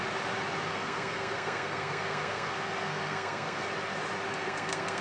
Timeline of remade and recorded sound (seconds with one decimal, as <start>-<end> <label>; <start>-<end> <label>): 0.0-0.7 recorded; 0.7-3.7 remade; 3.7-4.3 recorded; 4.3-5.0 remade